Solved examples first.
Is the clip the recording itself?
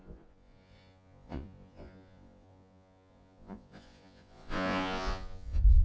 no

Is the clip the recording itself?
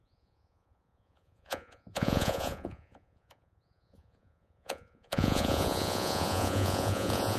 no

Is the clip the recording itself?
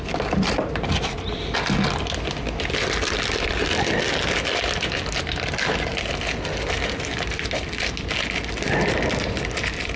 yes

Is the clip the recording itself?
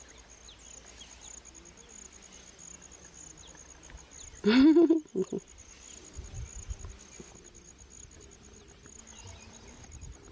yes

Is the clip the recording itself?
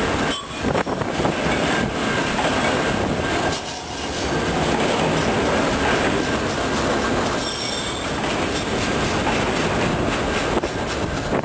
yes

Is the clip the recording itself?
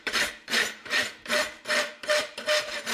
no